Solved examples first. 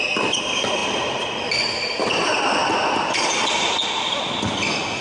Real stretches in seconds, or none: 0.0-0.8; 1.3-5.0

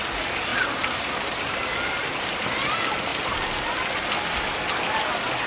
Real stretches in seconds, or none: 0.0-5.5